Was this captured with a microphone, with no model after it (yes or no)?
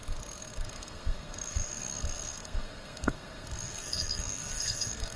no